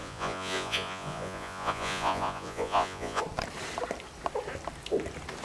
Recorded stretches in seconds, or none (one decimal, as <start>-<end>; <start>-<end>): 3.2-5.4